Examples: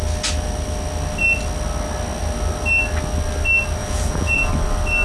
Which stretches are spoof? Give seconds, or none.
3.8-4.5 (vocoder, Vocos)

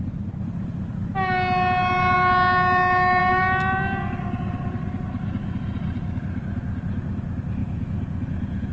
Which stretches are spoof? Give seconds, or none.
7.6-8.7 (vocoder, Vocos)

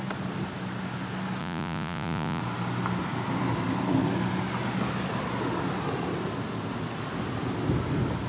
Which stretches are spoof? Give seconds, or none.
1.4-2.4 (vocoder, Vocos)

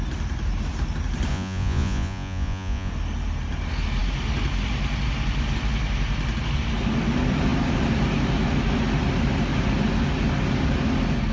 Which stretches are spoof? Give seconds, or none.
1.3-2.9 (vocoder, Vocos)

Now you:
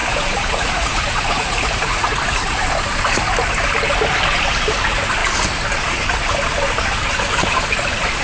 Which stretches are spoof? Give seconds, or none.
0.0-2.7 (vocoder, Vocos)

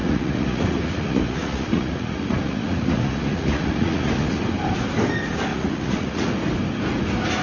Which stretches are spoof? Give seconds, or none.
0.0-4.4 (vocoder, Vocos); 5.5-6.3